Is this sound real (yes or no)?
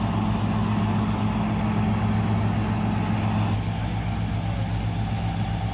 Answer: yes